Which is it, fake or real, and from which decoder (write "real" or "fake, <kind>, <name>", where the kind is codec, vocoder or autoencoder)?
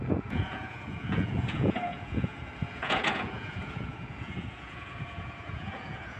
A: fake, vocoder, Vocos